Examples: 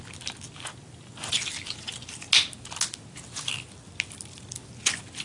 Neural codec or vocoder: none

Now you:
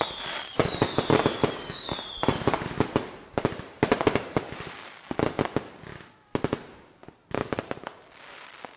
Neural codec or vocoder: none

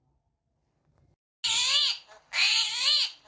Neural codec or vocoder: none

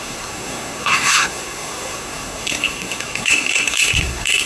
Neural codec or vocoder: codec, SNAC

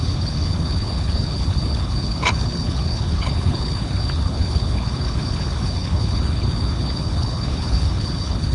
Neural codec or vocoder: codec, HILCodec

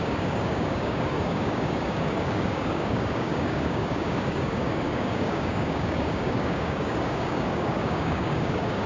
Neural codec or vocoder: codec, DAC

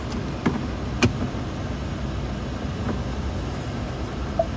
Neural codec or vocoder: none